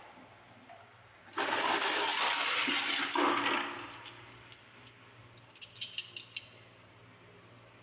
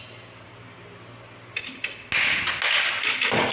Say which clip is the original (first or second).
second